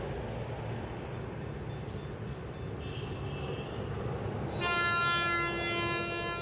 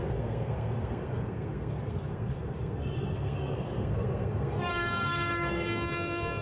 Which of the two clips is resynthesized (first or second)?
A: second